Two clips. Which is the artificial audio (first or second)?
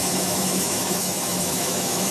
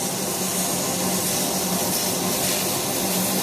first